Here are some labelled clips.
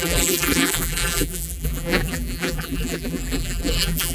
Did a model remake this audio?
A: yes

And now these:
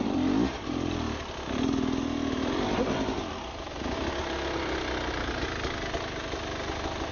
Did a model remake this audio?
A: no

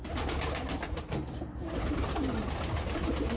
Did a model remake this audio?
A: no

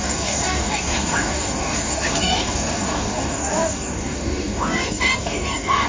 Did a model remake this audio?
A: yes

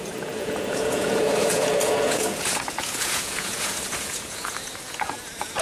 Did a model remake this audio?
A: yes